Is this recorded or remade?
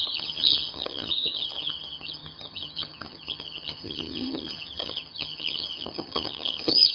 remade